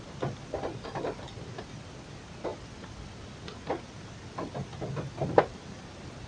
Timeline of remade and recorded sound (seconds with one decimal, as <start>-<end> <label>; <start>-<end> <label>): 0.0-6.3 recorded